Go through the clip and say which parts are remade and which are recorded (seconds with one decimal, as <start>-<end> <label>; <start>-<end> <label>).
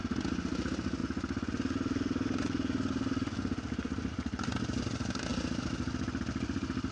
0.0-6.9 recorded